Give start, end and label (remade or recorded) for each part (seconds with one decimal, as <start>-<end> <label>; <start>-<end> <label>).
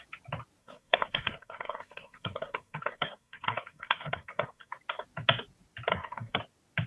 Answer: 0.0-0.6 recorded; 0.6-4.7 remade; 4.7-5.9 recorded; 5.9-6.4 remade; 6.4-6.9 recorded